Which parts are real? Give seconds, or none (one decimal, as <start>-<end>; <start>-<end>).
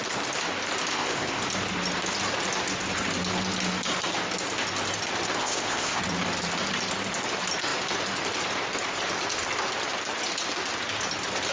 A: 0.0-0.9; 1.4-5.4; 6.0-11.5